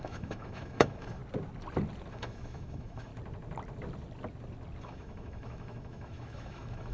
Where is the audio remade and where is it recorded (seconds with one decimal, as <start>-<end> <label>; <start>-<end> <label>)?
0.0-1.2 remade; 1.2-2.1 recorded; 2.1-3.1 remade; 3.1-4.8 recorded; 4.8-6.9 remade